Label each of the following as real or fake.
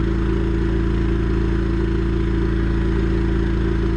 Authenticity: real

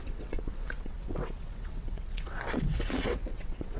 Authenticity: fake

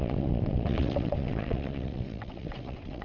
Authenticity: fake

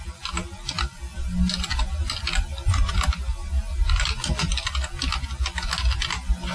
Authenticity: real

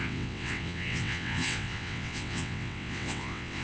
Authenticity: fake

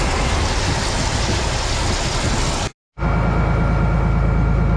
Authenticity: real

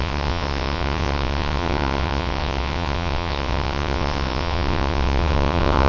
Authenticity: fake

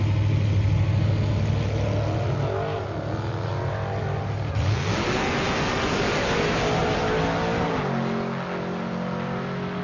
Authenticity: real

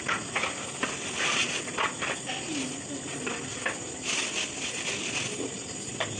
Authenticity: real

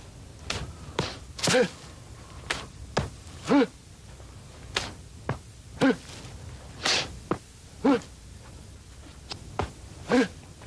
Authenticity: real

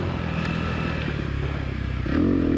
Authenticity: real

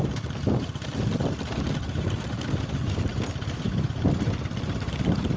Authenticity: real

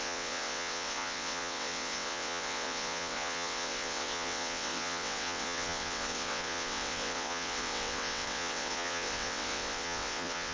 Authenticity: fake